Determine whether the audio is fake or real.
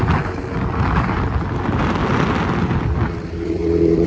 real